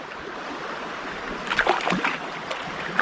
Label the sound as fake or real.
real